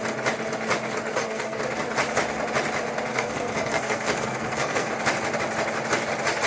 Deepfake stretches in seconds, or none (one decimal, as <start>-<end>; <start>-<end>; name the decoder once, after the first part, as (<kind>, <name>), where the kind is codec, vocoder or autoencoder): 1.1-1.6 (codec, SNAC); 3.1-4.9